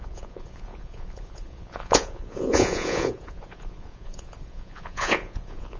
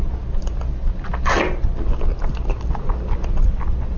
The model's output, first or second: first